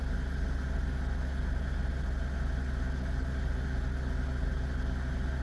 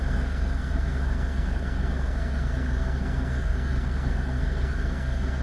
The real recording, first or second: first